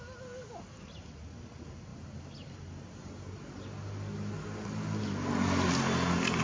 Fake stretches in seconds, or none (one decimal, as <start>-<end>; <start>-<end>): none